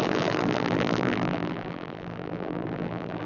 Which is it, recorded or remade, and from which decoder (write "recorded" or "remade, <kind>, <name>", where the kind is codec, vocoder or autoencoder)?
remade, vocoder, BigVGAN v2